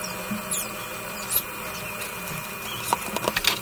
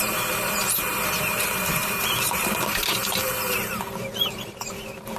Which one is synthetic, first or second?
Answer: second